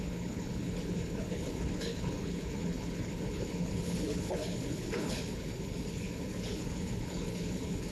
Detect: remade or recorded remade